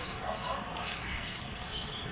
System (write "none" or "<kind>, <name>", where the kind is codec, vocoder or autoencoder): codec, SNAC